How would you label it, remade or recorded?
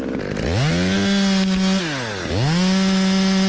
recorded